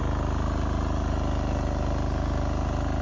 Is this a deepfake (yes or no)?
no